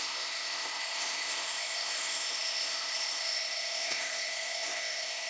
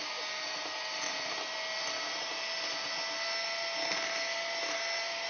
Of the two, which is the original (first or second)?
second